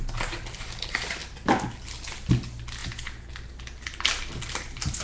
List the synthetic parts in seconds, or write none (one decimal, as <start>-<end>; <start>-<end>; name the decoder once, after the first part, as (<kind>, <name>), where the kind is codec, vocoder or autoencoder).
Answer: 2.8-3.3 (vocoder, Vocos)